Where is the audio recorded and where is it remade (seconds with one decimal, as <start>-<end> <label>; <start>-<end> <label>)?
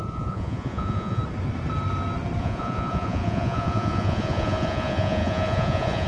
0.0-1.2 remade; 1.2-2.4 recorded; 2.4-6.1 remade